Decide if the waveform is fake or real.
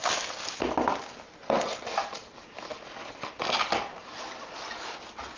real